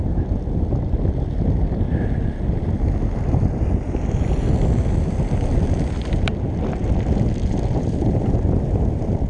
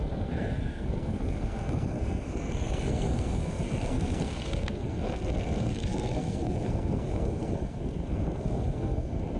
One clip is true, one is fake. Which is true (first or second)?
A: first